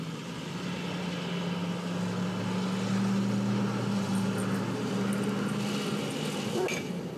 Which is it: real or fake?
real